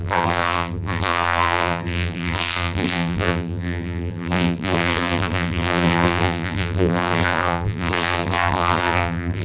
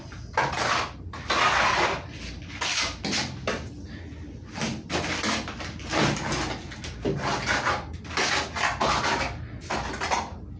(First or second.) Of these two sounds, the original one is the second